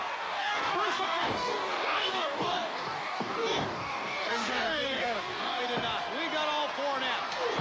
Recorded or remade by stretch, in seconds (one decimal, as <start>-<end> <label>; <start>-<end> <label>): 0.0-5.6 remade; 5.6-7.6 recorded